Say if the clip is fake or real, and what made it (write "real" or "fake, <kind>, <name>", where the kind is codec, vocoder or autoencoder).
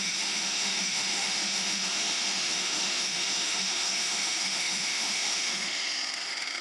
fake, autoencoder, DAC-VAE